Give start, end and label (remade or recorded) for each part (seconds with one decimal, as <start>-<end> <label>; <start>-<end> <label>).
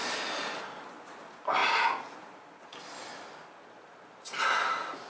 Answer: 0.0-5.1 recorded